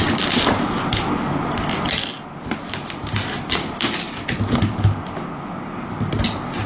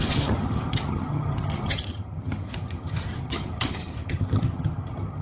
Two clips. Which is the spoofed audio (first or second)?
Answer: second